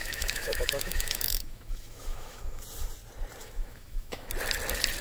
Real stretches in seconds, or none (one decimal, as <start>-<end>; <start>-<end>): 2.6-3.4; 4.3-5.0